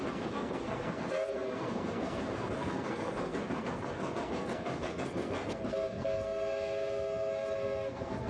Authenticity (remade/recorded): remade